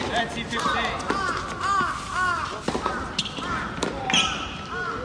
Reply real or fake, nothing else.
real